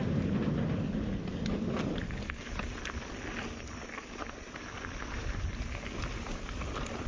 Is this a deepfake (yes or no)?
no